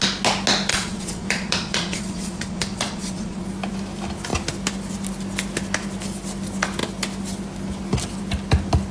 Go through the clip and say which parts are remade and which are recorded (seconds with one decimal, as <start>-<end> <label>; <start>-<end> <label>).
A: 0.0-0.7 recorded; 0.7-3.4 remade; 3.4-8.9 recorded